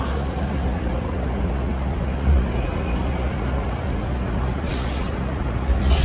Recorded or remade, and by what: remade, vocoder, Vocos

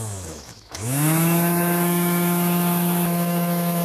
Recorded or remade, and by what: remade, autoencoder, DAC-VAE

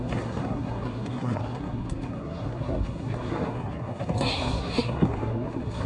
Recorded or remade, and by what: remade, codec, SNAC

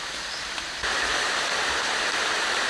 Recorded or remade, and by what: remade, vocoder, BigVGAN v2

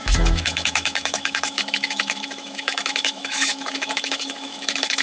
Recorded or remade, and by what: remade, autoencoder, DAC-VAE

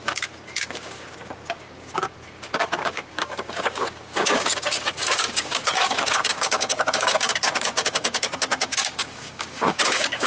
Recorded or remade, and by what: remade, codec, DAC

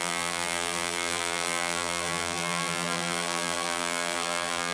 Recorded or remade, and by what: remade, vocoder, BigVGAN v2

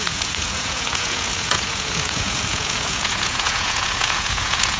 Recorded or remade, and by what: remade, vocoder, Vocos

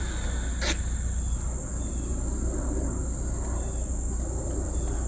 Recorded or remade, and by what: recorded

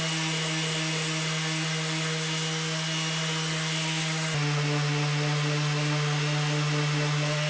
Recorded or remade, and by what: recorded